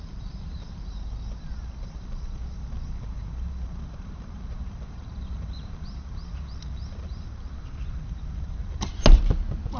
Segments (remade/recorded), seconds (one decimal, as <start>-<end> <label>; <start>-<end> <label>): 0.0-8.9 remade; 8.9-9.8 recorded